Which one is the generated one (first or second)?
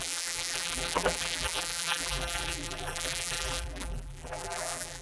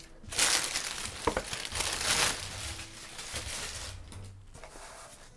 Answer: first